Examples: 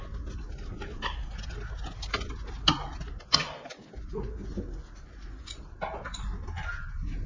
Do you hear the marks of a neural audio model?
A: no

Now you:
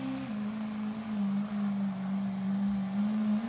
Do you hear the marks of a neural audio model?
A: no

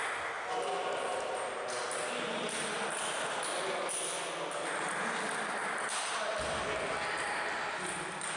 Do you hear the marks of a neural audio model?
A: no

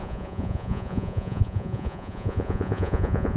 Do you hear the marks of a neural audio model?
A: yes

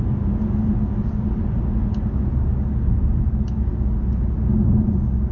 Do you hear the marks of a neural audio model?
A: no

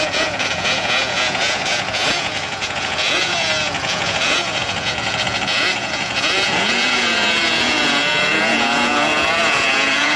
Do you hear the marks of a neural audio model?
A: yes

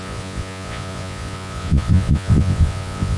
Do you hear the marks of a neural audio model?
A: yes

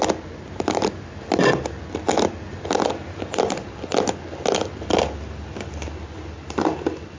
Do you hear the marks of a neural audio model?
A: no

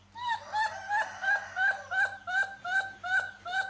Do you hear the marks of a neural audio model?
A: no